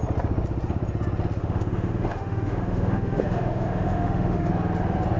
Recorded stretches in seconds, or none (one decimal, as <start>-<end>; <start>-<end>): 0.0-1.4; 4.5-5.2

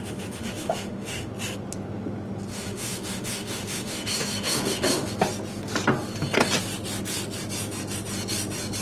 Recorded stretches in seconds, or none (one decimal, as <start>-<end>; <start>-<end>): 1.3-2.5; 5.1-8.8

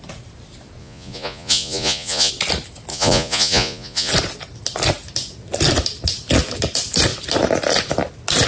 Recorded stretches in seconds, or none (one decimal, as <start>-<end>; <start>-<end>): 0.0-0.8; 2.3-2.9; 4.1-8.5

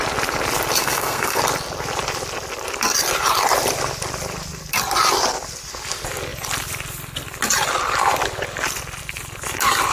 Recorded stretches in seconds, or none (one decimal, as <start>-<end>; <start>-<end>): 0.0-0.8; 1.4-9.9

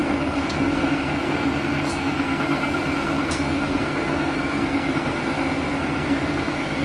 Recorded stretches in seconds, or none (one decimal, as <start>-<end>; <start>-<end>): none

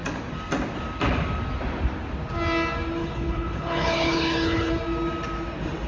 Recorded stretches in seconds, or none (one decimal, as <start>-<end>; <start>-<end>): 0.0-3.0; 4.7-5.9

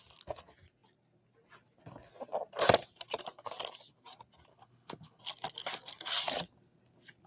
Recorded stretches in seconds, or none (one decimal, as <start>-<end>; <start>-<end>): 0.0-4.5; 5.2-7.3